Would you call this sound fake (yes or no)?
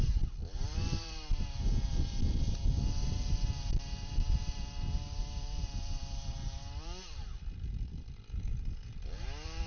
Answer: yes